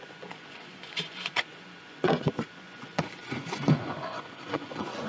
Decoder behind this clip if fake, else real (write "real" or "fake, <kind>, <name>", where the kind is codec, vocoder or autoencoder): fake, vocoder, Vocos